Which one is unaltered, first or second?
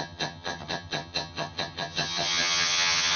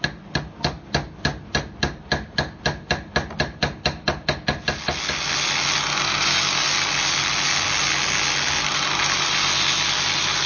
second